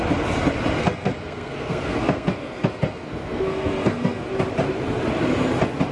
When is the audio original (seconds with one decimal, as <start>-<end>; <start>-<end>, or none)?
0.0-0.8; 4.3-5.9